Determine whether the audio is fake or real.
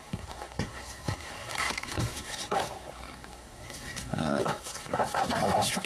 fake